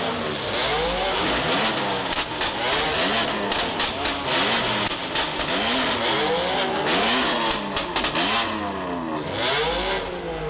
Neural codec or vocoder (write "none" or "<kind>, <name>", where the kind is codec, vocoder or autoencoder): none